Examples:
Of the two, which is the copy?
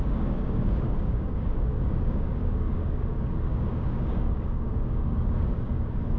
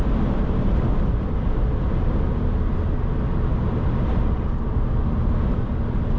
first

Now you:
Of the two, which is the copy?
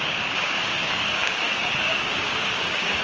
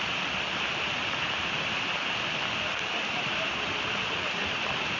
first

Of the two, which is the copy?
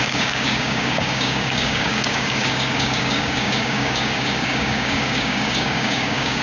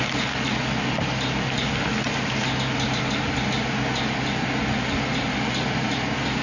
first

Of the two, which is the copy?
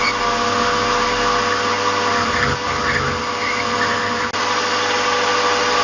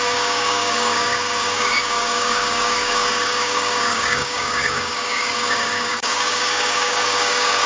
second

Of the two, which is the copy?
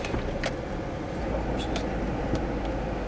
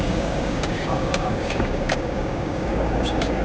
second